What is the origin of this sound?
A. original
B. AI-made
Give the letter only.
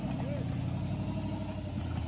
A